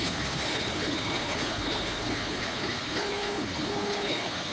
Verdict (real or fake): fake